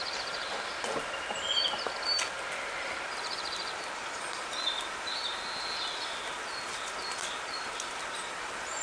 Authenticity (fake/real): real